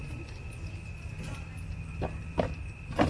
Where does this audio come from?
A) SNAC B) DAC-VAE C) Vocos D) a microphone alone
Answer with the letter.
D